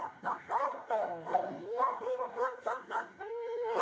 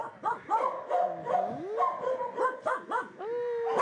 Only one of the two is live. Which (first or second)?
second